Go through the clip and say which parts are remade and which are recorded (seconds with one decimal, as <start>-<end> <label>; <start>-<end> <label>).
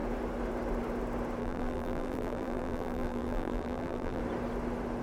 0.0-1.4 recorded; 1.4-4.2 remade; 4.2-5.0 recorded